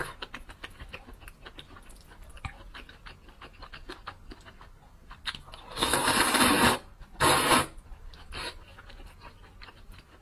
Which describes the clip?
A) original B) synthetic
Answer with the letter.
A